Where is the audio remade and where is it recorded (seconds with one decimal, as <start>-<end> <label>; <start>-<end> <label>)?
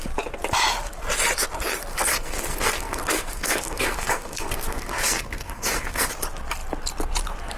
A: 0.0-1.9 recorded; 1.9-6.1 remade; 6.1-7.6 recorded